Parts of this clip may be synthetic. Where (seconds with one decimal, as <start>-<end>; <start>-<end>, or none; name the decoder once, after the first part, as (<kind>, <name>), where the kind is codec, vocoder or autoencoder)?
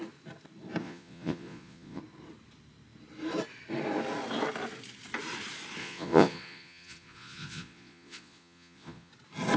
0.8-2.0 (vocoder, Vocos); 5.8-9.1